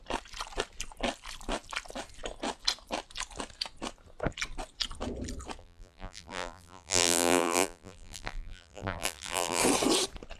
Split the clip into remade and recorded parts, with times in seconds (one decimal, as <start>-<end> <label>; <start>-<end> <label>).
0.0-5.6 recorded; 5.6-9.6 remade; 9.6-10.4 recorded